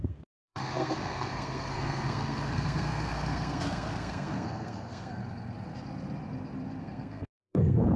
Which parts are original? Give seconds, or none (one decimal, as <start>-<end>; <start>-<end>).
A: 5.2-6.8